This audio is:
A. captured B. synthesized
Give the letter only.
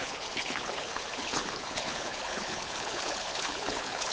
B